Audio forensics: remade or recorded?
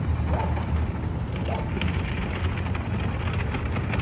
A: recorded